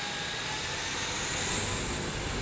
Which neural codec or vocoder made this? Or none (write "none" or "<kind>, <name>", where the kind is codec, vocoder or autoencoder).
none